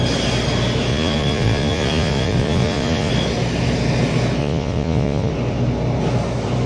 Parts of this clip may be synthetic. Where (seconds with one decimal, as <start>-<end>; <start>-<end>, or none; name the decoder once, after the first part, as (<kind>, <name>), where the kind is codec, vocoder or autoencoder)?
0.9-3.1 (vocoder, Vocos); 4.4-5.3